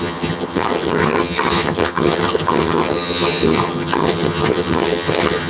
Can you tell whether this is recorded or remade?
remade